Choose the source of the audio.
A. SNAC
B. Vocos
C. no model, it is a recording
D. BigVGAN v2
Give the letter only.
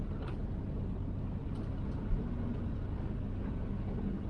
C